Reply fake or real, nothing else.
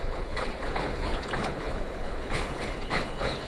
fake